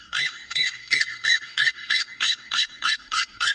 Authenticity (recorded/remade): remade